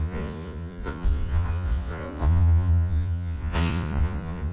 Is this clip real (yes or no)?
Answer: no